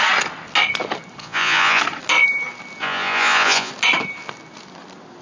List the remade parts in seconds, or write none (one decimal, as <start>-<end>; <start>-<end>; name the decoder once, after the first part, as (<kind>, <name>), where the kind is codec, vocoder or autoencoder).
1.2-1.8 (vocoder, Vocos); 2.8-3.7